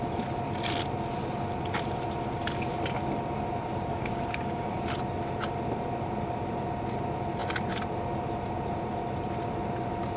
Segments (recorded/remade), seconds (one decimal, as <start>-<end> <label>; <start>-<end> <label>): 0.0-3.9 recorded; 3.9-4.7 remade; 4.7-10.2 recorded

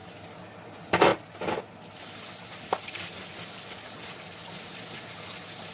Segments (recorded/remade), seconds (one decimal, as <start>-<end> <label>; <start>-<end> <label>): 0.0-5.7 recorded

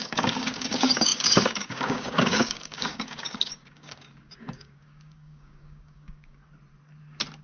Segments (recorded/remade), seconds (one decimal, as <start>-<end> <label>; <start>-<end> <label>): 0.0-6.4 remade; 6.4-7.4 recorded

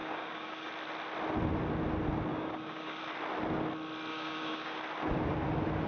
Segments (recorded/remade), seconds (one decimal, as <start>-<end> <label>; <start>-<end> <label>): 0.0-0.7 remade; 0.7-2.3 recorded; 2.3-3.0 remade; 3.0-4.1 recorded; 4.1-4.8 remade; 4.8-5.9 recorded

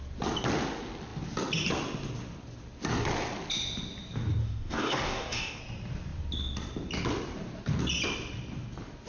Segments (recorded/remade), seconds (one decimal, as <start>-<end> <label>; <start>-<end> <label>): 0.0-4.4 recorded; 4.4-5.6 remade; 5.6-9.1 recorded

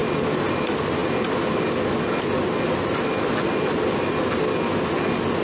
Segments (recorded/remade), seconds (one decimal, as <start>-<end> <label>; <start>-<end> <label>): 0.0-5.4 recorded

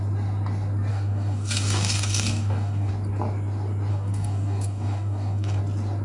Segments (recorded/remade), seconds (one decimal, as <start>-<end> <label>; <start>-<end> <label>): 0.0-0.9 recorded; 0.9-2.9 remade; 2.9-3.9 recorded; 3.9-5.6 remade; 5.6-6.0 recorded

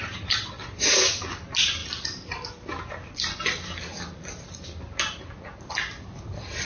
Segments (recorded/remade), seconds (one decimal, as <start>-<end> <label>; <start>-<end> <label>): 0.0-6.6 recorded